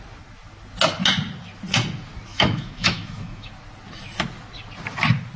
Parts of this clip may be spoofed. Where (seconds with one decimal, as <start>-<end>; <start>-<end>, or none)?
2.3-3.5